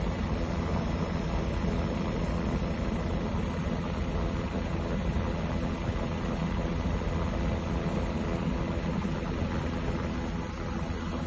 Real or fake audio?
real